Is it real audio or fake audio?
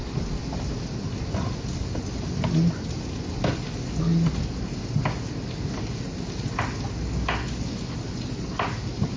real